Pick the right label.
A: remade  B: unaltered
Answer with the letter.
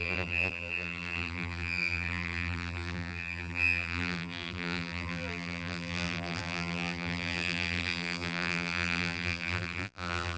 A